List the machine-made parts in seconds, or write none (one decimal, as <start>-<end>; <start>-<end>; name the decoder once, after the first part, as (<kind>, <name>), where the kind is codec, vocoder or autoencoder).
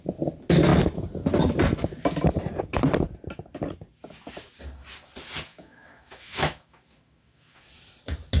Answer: 5.5-7.6 (autoencoder, DAC-VAE)